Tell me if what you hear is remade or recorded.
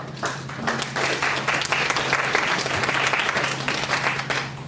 recorded